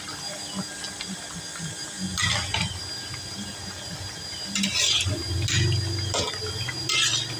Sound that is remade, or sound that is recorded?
recorded